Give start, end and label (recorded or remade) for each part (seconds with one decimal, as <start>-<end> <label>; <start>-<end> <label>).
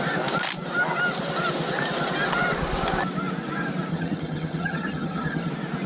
0.0-3.9 recorded; 3.9-5.5 remade; 5.5-5.9 recorded